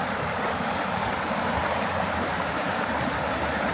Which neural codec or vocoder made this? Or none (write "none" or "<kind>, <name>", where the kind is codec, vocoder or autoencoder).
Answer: vocoder, BigVGAN v2